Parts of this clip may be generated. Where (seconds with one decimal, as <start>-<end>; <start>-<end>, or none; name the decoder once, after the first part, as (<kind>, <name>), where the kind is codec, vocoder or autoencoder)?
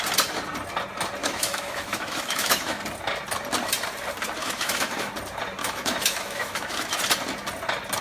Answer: 1.2-2.8 (autoencoder, DAC-VAE); 4.4-5.1; 5.6-7.0